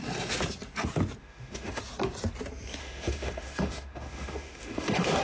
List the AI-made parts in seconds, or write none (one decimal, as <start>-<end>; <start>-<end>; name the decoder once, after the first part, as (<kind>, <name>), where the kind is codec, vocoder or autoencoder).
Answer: 1.2-1.8 (autoencoder, DAC-VAE); 2.8-5.2